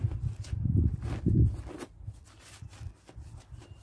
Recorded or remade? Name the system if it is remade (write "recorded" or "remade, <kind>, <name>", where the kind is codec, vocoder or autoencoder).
recorded